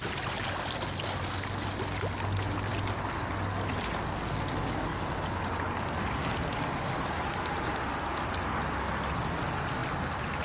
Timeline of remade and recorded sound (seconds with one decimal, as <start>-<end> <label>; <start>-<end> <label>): 0.0-10.4 recorded